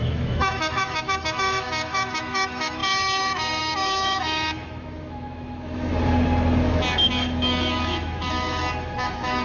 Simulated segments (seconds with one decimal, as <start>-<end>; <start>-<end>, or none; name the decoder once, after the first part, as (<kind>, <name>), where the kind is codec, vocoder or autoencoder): 0.0-5.9 (autoencoder, DAC-VAE); 6.9-9.4